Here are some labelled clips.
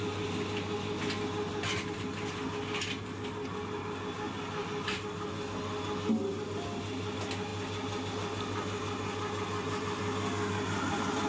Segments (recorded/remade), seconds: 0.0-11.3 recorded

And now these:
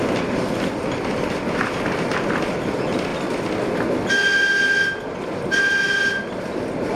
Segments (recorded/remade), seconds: 0.0-7.0 recorded

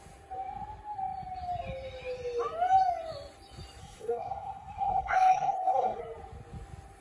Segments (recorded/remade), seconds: 0.0-3.8 recorded; 3.8-6.0 remade; 6.0-7.0 recorded

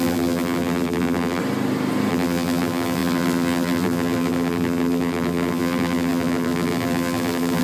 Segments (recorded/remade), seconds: 0.0-1.4 remade; 1.4-2.1 recorded; 2.1-7.6 remade

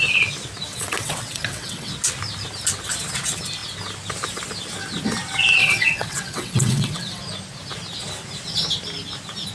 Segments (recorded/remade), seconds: 0.0-0.7 recorded; 0.7-1.9 remade; 1.9-5.6 recorded; 5.6-7.2 remade; 7.2-9.5 recorded

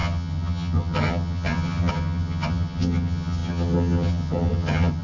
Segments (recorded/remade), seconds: 0.0-5.0 remade